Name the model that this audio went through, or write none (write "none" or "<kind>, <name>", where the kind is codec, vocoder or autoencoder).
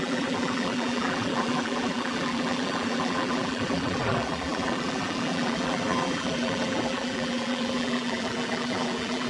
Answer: vocoder, BigVGAN v2